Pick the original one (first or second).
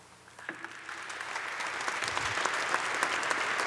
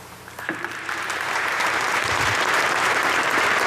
first